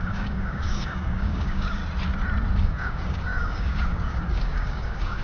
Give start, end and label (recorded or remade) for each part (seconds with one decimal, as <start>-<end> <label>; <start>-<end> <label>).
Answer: 0.0-1.8 remade; 1.8-2.6 recorded; 2.6-5.2 remade

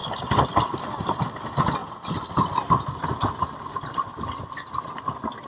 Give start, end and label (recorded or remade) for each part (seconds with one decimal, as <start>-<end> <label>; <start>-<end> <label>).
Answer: 0.0-5.5 recorded

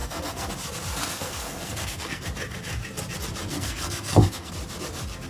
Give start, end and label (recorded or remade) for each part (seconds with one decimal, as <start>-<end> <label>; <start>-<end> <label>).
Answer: 0.0-0.5 remade; 0.5-1.0 recorded; 1.0-2.3 remade; 2.3-3.5 recorded; 3.5-4.5 remade; 4.5-5.3 recorded

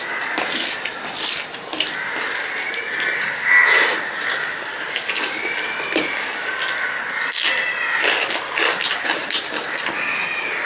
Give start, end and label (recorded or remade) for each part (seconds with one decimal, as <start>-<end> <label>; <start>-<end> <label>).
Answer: 0.0-10.7 recorded

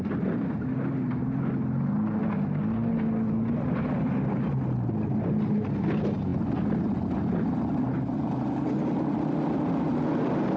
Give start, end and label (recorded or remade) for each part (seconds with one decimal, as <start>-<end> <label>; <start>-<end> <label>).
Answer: 0.0-10.6 recorded